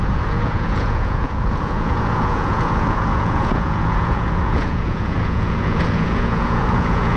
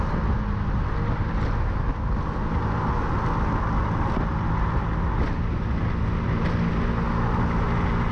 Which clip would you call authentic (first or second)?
second